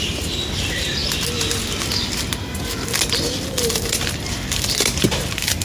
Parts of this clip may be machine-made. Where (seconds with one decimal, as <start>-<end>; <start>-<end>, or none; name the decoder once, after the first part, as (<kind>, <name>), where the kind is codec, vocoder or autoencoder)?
none